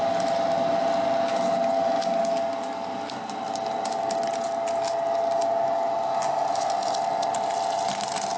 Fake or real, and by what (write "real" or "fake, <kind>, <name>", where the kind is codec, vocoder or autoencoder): real